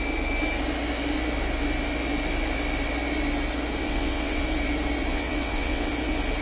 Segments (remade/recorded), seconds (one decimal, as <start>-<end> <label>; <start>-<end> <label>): 0.0-3.8 recorded; 3.8-4.4 remade; 4.4-5.1 recorded; 5.1-5.9 remade; 5.9-6.4 recorded